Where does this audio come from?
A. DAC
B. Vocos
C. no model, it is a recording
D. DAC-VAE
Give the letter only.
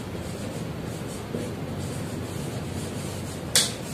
C